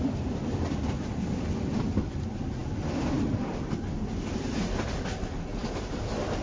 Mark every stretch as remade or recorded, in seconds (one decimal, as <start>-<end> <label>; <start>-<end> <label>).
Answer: 0.0-6.4 remade